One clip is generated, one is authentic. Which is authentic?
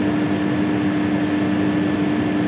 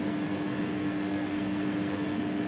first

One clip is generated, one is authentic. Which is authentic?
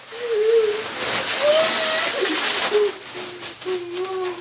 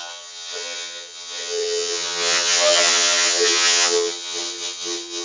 first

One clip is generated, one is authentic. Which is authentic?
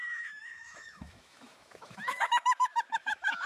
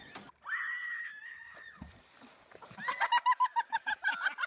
second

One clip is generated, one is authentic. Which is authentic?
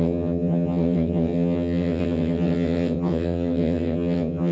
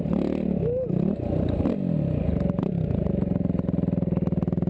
second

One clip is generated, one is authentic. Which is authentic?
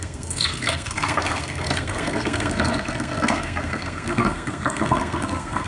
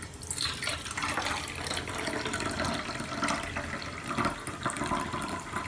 second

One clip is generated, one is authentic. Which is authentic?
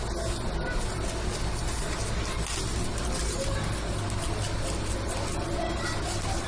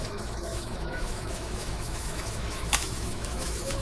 first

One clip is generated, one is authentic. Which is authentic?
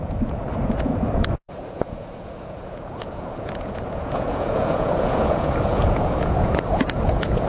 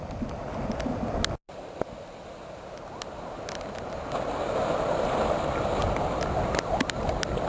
second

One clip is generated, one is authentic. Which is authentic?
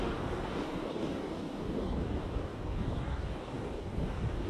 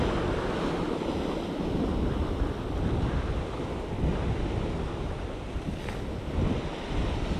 second